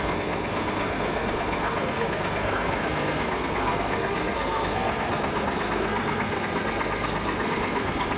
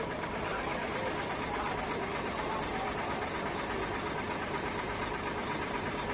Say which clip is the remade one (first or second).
first